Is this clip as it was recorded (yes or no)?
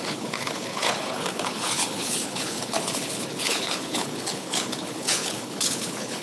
no